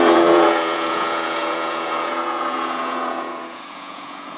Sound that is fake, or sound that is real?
fake